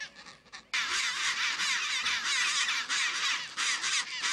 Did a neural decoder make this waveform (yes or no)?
no